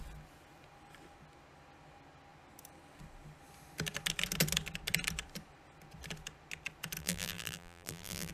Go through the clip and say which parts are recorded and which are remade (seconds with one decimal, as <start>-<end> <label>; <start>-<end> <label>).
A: 0.0-7.0 recorded; 7.0-8.3 remade